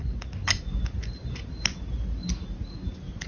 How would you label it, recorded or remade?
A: recorded